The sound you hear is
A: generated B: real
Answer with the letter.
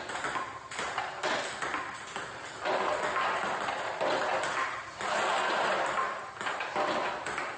B